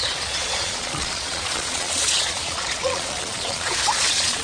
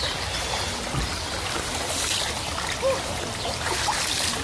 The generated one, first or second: first